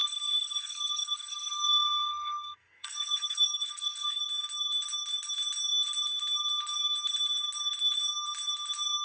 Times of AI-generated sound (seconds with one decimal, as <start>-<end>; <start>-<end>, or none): 0.0-4.2